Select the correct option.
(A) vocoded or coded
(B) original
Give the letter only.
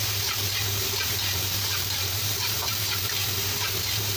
A